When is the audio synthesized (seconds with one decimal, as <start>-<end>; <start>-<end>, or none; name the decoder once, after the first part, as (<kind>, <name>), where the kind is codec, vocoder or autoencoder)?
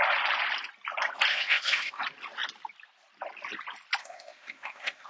1.3-2.0 (codec, ZipCodec); 4.0-5.1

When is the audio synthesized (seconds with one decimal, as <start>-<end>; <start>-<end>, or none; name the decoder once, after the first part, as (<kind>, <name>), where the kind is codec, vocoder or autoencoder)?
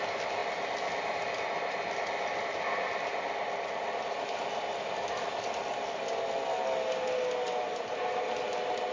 none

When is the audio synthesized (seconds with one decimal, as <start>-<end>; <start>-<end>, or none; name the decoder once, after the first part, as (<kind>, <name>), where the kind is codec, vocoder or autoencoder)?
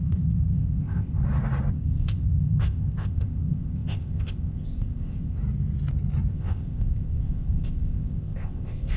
0.0-1.2 (codec, ZipCodec); 1.7-5.4; 6.3-9.0